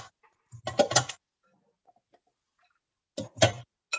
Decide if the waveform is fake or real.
real